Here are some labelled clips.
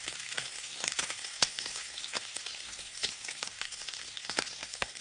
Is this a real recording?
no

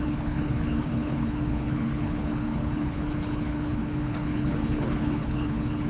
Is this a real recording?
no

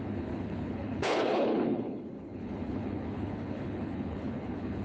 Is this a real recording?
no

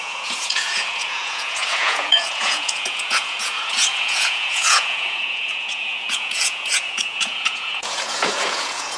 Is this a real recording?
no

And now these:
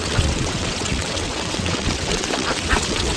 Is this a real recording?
no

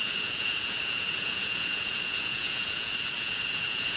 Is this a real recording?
no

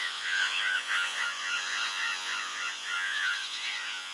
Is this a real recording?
no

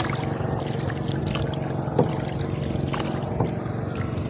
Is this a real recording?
yes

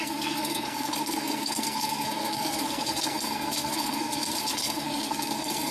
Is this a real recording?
no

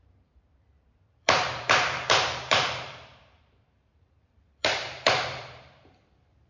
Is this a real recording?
no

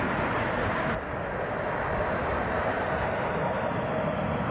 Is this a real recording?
yes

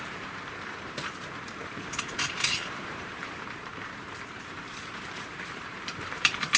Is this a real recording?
no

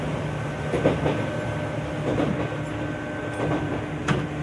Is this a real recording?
yes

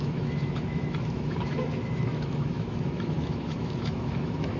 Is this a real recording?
no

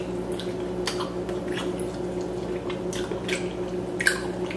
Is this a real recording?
yes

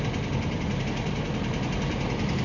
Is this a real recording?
yes